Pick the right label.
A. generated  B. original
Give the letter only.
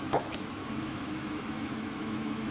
A